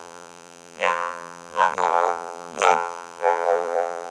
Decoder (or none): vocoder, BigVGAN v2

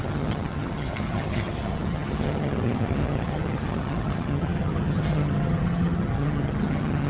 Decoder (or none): vocoder, HiFi-GAN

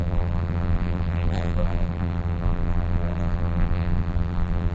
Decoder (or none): vocoder, BigVGAN v2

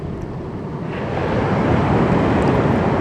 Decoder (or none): none